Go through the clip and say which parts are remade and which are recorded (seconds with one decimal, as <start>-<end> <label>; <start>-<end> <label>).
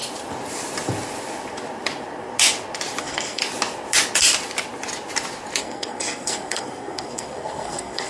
0.0-3.0 recorded; 3.0-3.4 remade; 3.4-5.6 recorded; 5.6-8.1 remade